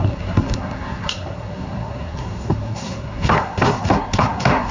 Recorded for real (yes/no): no